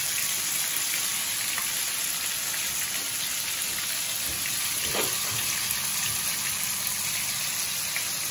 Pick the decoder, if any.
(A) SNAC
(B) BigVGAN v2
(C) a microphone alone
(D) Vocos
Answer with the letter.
C